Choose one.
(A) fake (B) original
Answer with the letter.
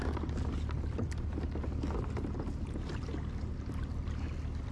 B